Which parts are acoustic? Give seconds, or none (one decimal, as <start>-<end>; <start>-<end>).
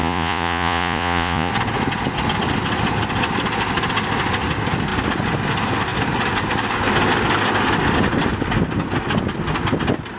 1.5-10.2